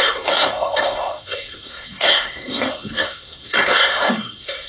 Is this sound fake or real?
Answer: fake